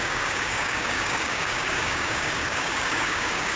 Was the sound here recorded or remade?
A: remade